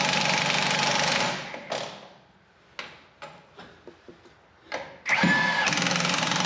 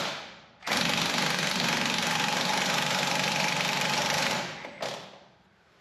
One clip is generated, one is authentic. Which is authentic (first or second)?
first